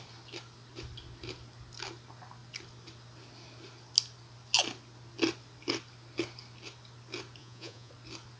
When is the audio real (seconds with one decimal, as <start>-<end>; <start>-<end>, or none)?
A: 0.0-7.4; 7.9-8.4